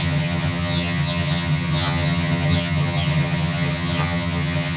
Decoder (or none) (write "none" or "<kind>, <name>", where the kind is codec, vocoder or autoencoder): vocoder, HiFi-GAN